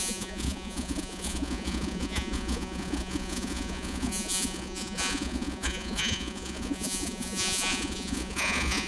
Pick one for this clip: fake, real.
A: fake